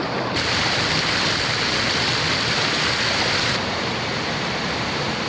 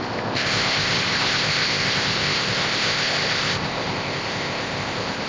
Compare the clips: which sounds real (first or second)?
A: first